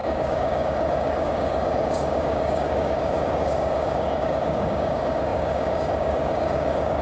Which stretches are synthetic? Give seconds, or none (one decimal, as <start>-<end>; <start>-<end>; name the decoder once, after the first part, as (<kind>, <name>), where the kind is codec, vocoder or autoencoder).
0.0-7.0 (codec, DAC)